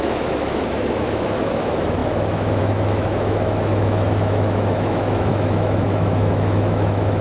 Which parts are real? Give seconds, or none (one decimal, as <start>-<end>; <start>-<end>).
none